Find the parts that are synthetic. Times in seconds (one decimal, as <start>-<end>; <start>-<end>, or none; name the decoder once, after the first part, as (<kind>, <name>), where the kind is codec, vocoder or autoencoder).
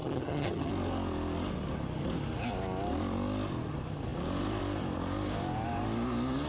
0.0-0.7 (vocoder, HiFi-GAN)